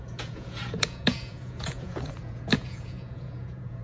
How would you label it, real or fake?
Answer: fake